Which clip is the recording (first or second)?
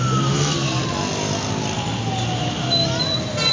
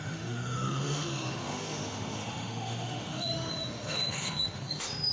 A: first